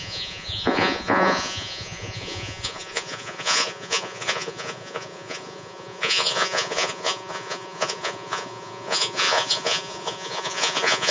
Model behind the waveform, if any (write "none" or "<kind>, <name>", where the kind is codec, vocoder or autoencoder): vocoder, Vocos